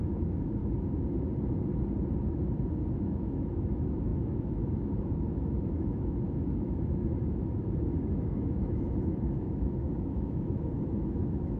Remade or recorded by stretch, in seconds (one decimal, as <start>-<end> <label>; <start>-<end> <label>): 0.0-0.6 remade; 0.6-3.0 recorded; 3.0-11.6 remade